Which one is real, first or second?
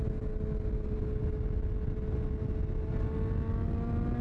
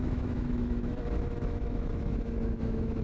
first